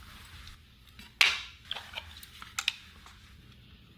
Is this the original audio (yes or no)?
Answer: yes